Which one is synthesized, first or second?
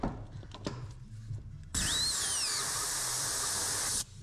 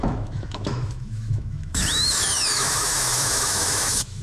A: second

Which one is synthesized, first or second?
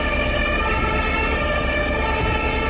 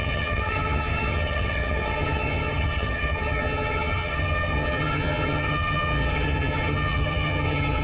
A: second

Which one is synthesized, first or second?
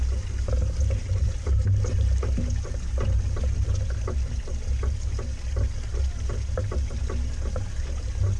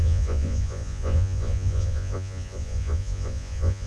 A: second